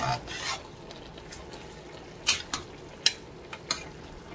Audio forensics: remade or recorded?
recorded